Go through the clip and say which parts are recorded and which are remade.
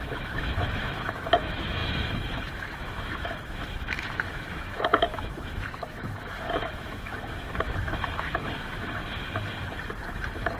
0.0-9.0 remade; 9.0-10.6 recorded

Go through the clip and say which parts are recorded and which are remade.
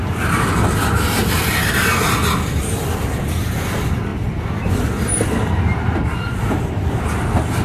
0.0-2.2 recorded; 2.2-3.3 remade; 3.3-7.6 recorded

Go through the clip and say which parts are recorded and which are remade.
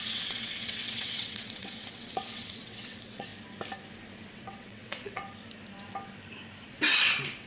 0.0-3.3 remade; 3.3-4.3 recorded; 4.3-5.2 remade; 5.2-6.7 recorded; 6.7-7.5 remade